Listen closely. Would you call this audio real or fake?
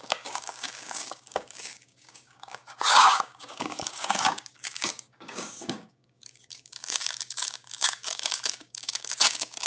fake